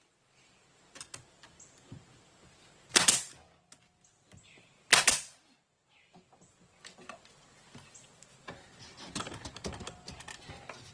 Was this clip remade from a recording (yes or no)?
no